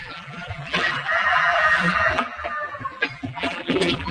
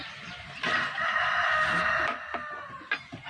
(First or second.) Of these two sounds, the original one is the second